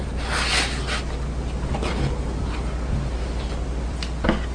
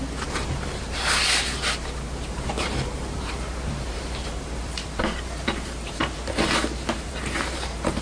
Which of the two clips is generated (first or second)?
second